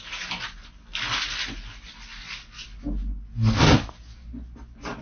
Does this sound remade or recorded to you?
recorded